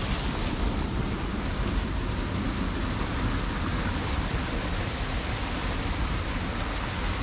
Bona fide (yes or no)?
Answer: yes